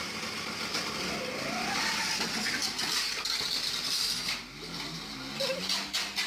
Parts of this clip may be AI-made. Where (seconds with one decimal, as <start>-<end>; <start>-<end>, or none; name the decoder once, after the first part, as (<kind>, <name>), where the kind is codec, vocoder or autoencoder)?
none